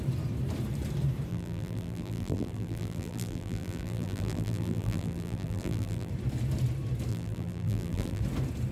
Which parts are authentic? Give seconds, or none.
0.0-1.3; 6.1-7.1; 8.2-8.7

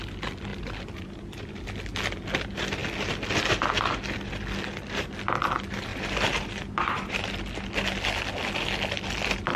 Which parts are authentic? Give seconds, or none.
0.0-0.5; 1.6-5.9; 7.3-9.6